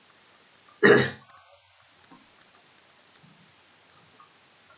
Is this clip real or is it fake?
real